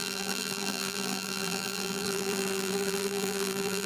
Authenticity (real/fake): fake